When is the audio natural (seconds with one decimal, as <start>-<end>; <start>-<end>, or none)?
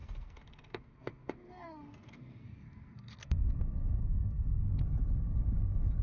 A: 3.6-4.0; 4.8-6.0